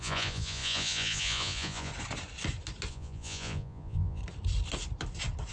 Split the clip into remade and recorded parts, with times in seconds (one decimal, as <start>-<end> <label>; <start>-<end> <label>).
0.0-1.9 remade; 1.9-2.9 recorded; 2.9-4.2 remade; 4.2-5.5 recorded